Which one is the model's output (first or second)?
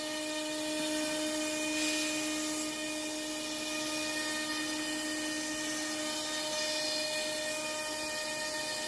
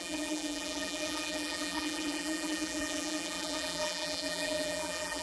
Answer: second